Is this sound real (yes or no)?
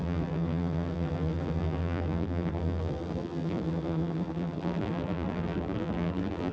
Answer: no